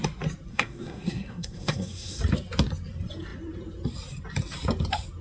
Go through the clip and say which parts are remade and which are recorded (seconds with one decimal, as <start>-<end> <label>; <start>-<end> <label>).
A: 0.0-0.5 recorded; 0.5-2.2 remade; 2.2-5.2 recorded